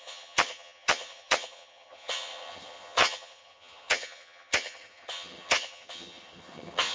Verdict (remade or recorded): remade